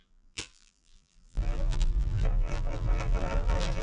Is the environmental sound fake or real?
fake